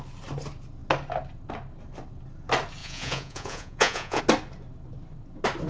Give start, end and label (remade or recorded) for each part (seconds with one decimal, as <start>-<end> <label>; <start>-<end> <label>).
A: 0.0-2.8 recorded; 2.8-4.2 remade; 4.2-5.7 recorded